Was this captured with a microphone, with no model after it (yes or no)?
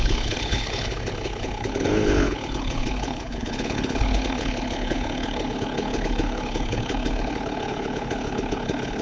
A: no